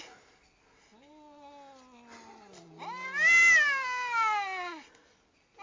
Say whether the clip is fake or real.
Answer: real